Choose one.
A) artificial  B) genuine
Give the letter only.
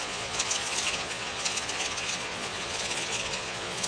A